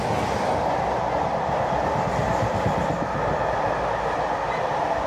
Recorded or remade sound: recorded